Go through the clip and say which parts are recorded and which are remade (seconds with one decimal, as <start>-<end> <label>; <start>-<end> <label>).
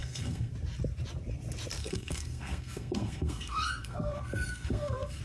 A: 0.0-0.5 remade; 0.5-1.8 recorded; 1.8-5.2 remade